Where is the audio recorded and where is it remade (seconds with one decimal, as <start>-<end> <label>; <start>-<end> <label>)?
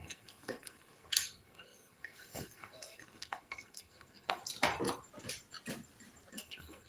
0.0-4.4 remade; 4.4-6.3 recorded; 6.3-6.9 remade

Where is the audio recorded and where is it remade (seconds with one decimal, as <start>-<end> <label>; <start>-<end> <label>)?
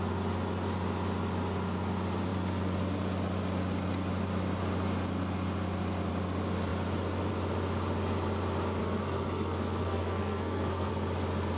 0.0-8.8 recorded; 8.8-10.9 remade; 10.9-11.6 recorded